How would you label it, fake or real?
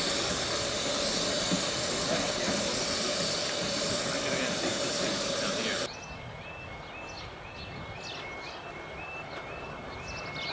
real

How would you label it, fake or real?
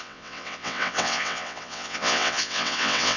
fake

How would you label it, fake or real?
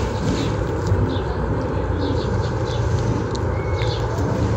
real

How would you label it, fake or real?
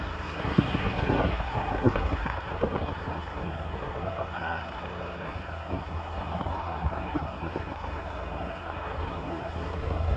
fake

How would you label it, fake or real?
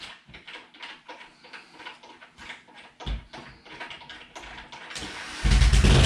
real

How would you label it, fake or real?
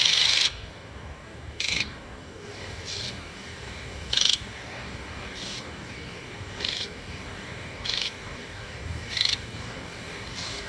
fake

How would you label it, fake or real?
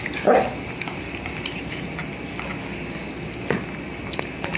real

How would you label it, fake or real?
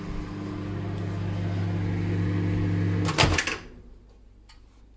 real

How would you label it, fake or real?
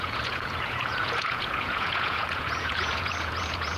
fake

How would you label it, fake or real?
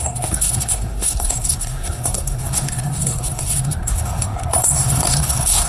fake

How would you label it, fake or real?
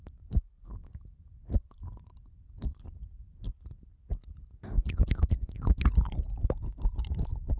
real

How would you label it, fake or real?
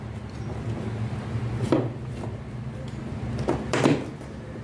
fake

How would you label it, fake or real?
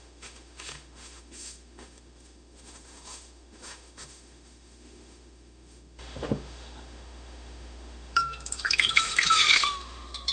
fake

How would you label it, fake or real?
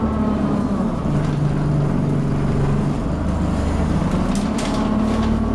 real